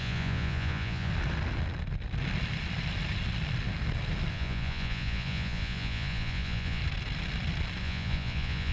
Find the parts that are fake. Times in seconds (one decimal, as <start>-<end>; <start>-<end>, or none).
0.0-1.1; 4.3-6.8; 7.8-8.7